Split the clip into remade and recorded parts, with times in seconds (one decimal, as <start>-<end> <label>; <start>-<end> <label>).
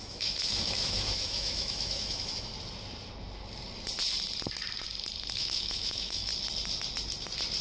0.0-2.5 remade; 2.5-5.3 recorded; 5.3-6.3 remade; 6.3-7.6 recorded